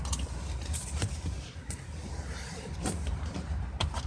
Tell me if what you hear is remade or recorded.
recorded